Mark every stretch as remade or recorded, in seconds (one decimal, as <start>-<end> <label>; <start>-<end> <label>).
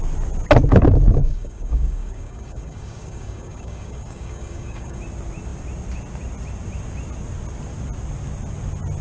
0.0-1.2 recorded; 1.2-5.0 remade; 5.0-9.0 recorded